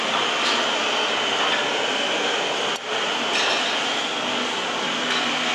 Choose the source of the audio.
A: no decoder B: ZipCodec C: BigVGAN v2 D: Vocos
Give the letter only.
A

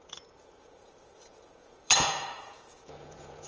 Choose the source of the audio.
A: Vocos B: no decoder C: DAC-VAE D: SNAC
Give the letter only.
A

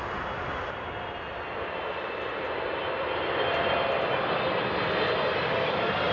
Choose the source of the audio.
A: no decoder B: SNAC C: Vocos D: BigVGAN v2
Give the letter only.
A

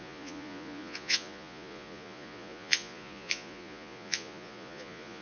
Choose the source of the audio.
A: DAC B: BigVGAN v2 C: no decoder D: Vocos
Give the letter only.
D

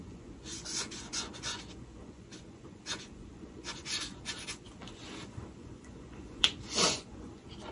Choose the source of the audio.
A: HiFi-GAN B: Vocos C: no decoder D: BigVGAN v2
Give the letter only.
B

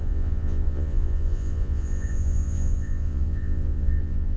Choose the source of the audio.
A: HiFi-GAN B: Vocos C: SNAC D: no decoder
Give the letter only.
B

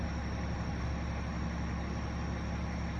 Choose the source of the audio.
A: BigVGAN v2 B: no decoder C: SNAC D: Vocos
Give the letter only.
B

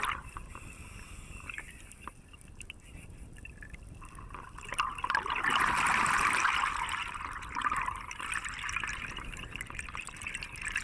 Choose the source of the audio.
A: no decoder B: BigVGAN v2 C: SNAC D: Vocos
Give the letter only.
A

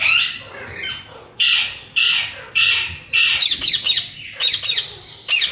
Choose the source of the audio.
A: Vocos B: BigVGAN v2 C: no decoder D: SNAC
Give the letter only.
C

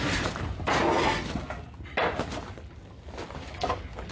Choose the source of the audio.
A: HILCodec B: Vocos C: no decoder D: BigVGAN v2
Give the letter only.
C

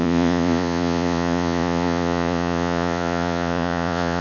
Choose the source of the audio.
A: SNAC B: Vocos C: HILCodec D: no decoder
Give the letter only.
B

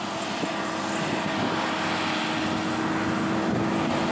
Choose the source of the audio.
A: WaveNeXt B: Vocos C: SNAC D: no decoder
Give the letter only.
D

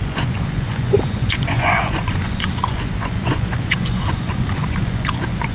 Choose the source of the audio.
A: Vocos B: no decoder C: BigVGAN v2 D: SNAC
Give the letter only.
A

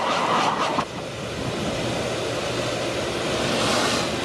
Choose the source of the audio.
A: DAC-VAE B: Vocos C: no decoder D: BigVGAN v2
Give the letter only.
C